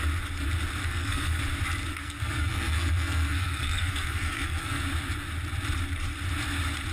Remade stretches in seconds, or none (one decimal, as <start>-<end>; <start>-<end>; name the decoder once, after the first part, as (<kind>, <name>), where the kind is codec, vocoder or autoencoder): 0.8-1.4 (codec, SNAC); 1.9-4.8